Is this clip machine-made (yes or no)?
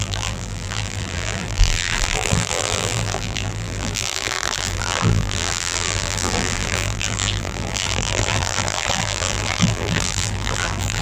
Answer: yes